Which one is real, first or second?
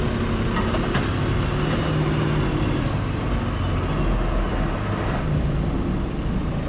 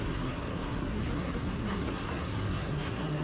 first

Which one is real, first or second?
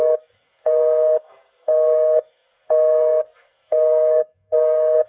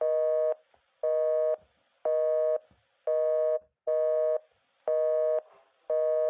second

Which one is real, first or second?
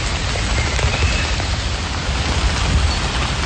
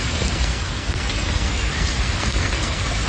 first